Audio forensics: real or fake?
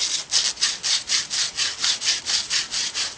real